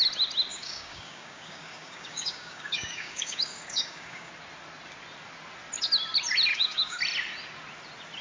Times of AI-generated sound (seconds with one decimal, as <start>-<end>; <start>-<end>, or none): 0.5-4.3; 6.5-7.0